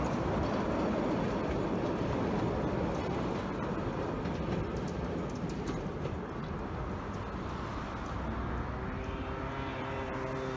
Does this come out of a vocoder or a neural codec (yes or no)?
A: no